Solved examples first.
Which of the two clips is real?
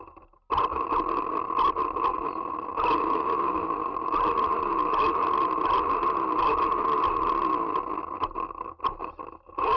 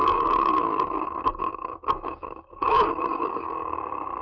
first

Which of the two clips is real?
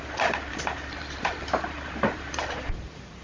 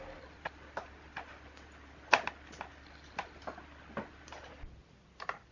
second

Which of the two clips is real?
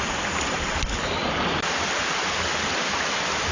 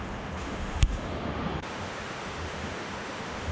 first